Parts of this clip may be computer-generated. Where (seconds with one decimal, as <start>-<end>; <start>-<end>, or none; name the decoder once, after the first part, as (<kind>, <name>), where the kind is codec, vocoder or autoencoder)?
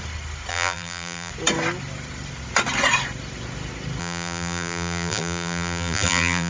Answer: 0.5-1.3 (vocoder, BigVGAN v2); 4.0-6.5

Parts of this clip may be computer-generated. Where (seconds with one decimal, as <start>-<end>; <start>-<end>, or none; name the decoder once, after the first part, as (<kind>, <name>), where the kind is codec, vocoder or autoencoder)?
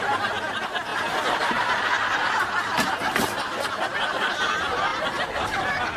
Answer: none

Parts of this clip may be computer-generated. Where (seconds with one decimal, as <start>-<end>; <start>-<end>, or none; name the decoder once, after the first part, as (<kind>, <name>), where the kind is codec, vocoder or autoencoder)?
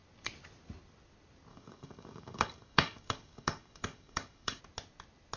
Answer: 1.5-4.6 (codec, DAC)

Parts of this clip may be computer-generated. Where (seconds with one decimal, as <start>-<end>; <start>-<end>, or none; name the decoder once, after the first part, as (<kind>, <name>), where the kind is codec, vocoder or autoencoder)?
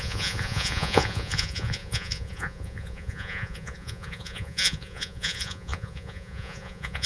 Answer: 0.0-7.1 (vocoder, Vocos)